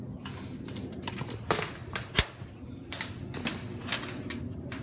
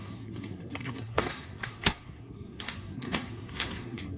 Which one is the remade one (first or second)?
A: second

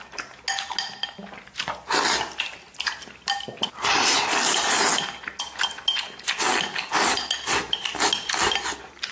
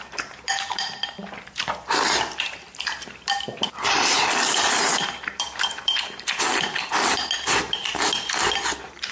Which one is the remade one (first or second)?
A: second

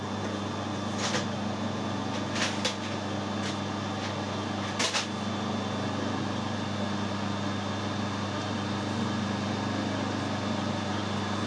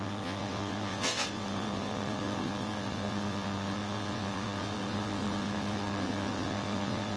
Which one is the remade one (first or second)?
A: second